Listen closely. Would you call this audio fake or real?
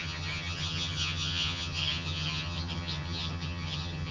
fake